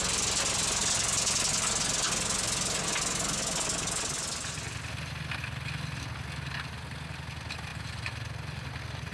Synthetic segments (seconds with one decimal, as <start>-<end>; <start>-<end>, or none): none